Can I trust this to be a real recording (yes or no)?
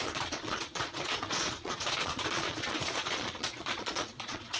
no